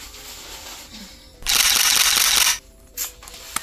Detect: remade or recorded recorded